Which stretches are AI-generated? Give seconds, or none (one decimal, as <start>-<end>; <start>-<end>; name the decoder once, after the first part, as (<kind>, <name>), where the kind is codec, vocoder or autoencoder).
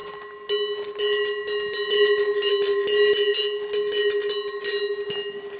none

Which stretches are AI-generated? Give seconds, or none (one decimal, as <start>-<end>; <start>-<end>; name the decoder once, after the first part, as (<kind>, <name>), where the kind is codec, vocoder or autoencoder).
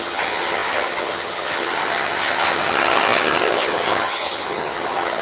0.0-5.2 (vocoder, HiFi-GAN)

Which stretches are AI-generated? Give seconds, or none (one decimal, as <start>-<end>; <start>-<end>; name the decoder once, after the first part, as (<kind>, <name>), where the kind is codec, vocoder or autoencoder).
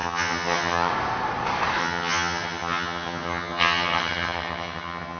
0.0-0.9 (vocoder, HiFi-GAN); 1.8-5.2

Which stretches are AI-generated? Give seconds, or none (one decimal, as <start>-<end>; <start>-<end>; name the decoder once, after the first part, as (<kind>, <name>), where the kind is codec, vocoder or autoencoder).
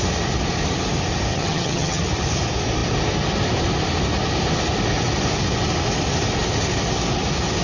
1.3-2.0 (vocoder, HiFi-GAN)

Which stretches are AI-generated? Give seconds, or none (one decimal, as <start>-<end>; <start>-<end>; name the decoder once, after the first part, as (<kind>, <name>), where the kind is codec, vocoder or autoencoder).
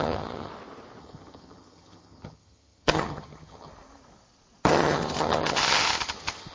0.0-0.5 (vocoder, HiFi-GAN); 1.0-3.7; 4.7-6.5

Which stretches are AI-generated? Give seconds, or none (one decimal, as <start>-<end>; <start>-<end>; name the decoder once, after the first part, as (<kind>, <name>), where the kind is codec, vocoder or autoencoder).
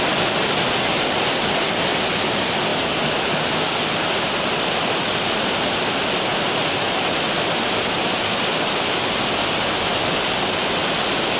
none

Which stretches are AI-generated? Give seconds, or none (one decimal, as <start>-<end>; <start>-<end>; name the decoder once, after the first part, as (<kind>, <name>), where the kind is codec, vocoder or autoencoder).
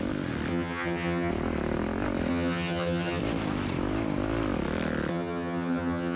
0.5-1.3 (vocoder, HiFi-GAN); 2.3-3.2; 5.1-6.2